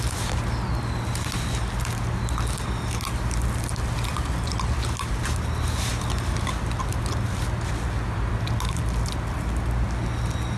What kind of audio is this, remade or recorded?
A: recorded